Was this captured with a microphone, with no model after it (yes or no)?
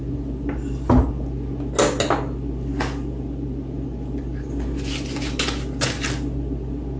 yes